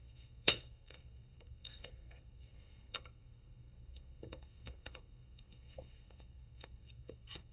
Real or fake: fake